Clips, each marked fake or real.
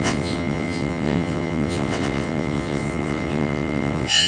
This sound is fake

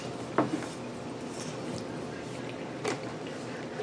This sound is real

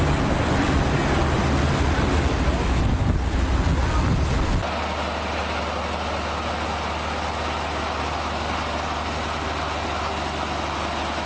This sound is real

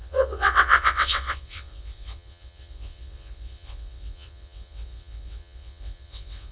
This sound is fake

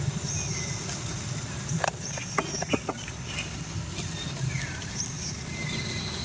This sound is real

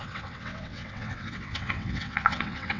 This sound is fake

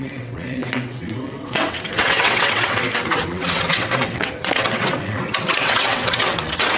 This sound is fake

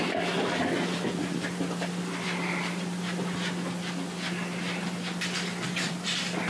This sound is real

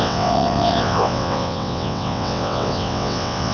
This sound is fake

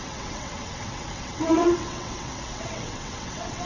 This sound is fake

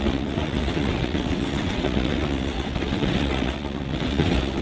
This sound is fake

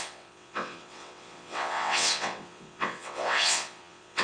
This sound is fake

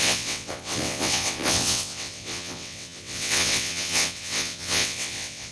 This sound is fake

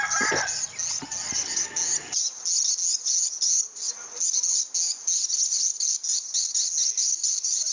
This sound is real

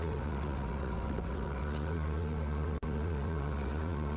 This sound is fake